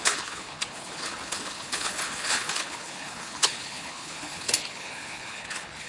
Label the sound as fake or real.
fake